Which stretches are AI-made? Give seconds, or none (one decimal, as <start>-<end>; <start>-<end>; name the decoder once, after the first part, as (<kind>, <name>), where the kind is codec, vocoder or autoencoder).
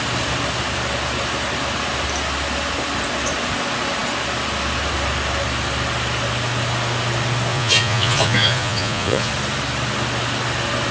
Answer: 7.5-9.3 (vocoder, Vocos)